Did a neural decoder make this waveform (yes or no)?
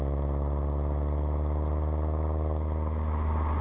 no